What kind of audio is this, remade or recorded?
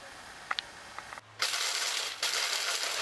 recorded